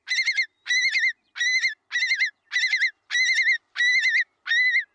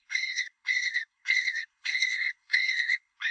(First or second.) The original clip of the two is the first